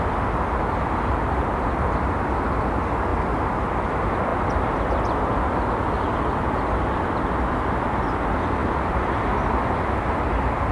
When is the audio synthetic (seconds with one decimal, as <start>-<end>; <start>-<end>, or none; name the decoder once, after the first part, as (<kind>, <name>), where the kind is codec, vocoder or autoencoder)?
none